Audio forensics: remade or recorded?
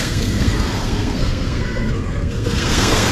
remade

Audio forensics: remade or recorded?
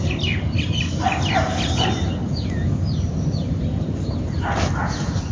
recorded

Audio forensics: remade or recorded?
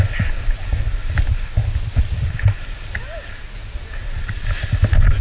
recorded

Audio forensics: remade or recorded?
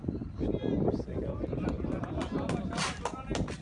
recorded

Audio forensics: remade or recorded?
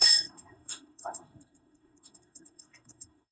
remade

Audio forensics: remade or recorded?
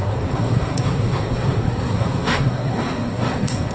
remade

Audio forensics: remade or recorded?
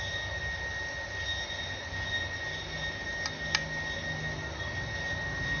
recorded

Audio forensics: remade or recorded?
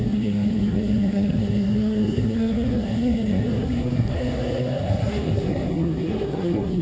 remade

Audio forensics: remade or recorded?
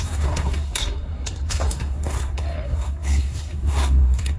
remade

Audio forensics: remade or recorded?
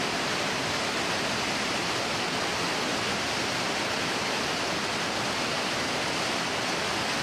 recorded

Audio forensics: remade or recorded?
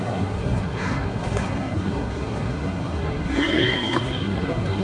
remade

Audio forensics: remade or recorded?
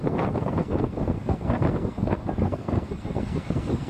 remade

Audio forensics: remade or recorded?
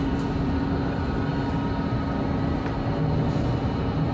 recorded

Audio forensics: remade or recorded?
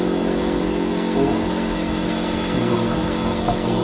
remade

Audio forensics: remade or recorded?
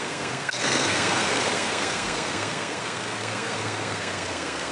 remade